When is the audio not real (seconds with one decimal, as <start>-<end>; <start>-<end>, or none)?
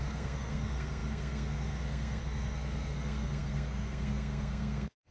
0.0-5.1